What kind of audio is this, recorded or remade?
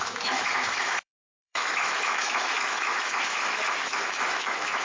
remade